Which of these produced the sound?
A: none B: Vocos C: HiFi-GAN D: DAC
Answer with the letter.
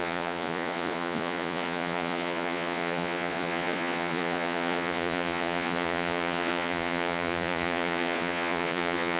B